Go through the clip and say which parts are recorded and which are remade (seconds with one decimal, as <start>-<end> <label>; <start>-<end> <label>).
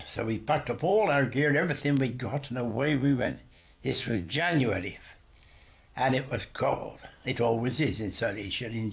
0.0-2.7 recorded; 2.7-4.6 remade; 4.6-8.9 recorded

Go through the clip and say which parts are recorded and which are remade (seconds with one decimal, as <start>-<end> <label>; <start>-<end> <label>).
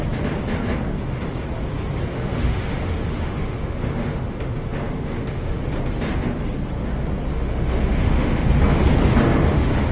0.0-2.1 recorded; 2.1-5.6 remade; 5.6-7.3 recorded; 7.3-8.5 remade; 8.5-9.9 recorded